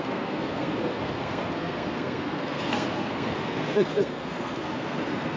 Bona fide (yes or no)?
no